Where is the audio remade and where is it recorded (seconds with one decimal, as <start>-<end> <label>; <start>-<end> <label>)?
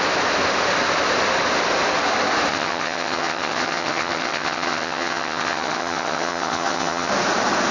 0.0-2.5 recorded; 2.5-7.1 remade; 7.1-7.7 recorded